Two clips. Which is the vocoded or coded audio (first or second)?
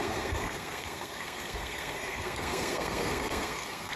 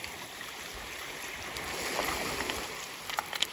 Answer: first